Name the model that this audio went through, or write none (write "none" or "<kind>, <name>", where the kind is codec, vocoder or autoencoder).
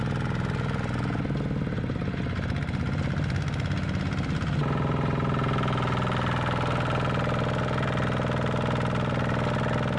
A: none